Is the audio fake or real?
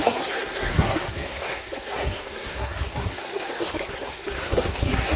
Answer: fake